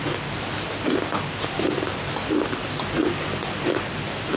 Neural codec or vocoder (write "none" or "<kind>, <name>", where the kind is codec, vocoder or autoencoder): none